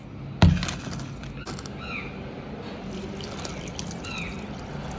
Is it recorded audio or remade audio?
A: recorded